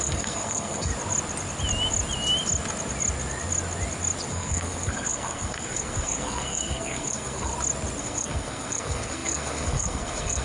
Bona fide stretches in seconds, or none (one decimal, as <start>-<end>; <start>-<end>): 0.9-4.3; 7.5-8.0

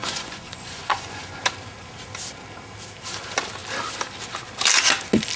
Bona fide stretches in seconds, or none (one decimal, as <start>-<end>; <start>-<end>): 1.4-5.4

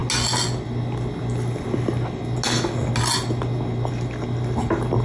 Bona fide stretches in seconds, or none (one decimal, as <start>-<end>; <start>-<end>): 0.0-5.0

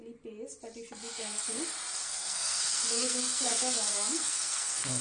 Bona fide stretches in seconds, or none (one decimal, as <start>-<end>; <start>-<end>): 0.0-1.1; 1.6-2.0

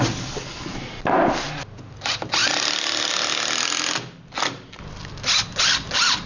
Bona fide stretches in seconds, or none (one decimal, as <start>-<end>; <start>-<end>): 0.0-6.3

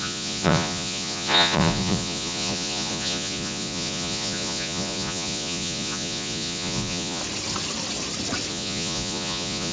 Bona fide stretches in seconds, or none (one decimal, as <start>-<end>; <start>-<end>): 7.2-8.5